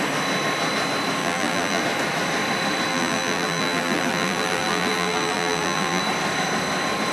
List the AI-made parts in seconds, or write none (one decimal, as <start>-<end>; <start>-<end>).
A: 1.2-1.8; 2.9-6.0